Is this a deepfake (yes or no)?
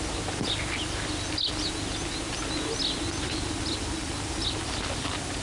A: no